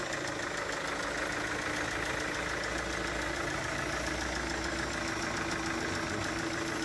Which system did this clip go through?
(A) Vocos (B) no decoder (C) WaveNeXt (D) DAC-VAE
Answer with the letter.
B